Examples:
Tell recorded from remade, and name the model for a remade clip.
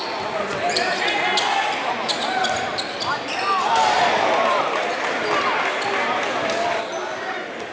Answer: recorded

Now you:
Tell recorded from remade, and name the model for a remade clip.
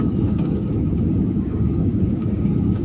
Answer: remade, codec, DAC